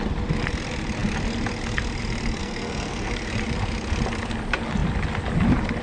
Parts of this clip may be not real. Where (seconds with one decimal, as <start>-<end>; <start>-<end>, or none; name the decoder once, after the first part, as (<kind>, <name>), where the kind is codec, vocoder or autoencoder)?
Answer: 2.4-3.1 (codec, SNAC)